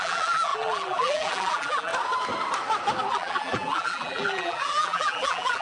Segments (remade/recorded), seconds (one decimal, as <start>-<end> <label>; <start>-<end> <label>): 0.0-1.9 remade; 1.9-3.1 recorded; 3.1-5.6 remade